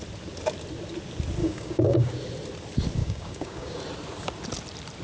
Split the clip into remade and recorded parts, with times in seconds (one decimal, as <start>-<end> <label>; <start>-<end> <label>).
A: 0.0-1.4 recorded; 1.4-2.1 remade; 2.1-3.0 recorded; 3.0-3.8 remade; 3.8-5.0 recorded